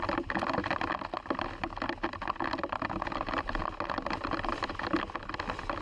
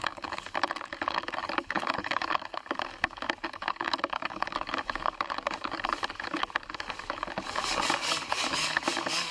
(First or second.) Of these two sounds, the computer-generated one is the second